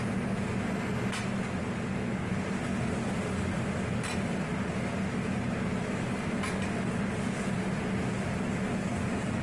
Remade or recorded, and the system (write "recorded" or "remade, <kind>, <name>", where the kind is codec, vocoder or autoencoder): recorded